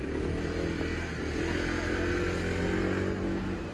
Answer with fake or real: real